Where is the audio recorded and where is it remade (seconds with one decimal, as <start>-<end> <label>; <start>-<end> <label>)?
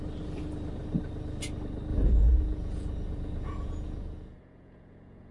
0.0-1.9 recorded; 1.9-5.3 remade